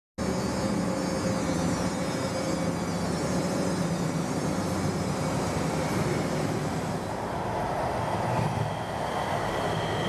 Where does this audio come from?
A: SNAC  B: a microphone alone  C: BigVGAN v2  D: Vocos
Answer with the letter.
B